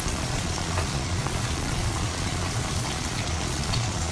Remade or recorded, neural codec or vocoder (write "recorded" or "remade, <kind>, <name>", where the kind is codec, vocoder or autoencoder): remade, vocoder, Vocos